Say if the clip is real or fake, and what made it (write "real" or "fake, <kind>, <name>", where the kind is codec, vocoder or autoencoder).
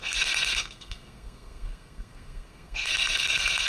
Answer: fake, codec, SNAC